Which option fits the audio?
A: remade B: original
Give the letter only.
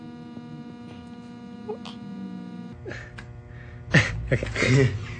B